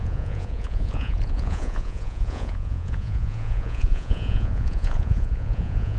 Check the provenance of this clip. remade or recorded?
remade